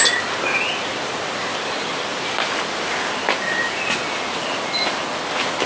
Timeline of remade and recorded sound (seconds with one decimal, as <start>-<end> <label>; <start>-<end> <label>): 0.0-5.7 recorded